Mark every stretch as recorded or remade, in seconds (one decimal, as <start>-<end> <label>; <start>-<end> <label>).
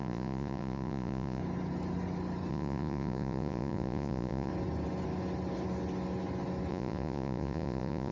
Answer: 0.0-1.4 remade; 1.4-2.5 recorded; 2.5-4.5 remade; 4.5-6.7 recorded; 6.7-8.1 remade